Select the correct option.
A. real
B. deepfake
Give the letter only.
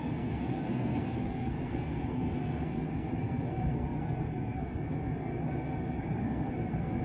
B